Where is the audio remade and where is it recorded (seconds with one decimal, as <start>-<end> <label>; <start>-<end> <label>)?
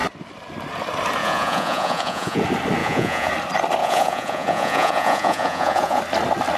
0.0-1.2 recorded; 1.2-2.4 remade; 2.4-2.8 recorded; 2.8-3.3 remade; 3.3-3.8 recorded; 3.8-6.0 remade; 6.0-6.6 recorded